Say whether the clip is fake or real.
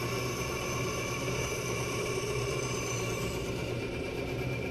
fake